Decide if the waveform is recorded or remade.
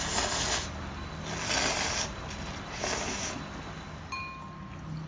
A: recorded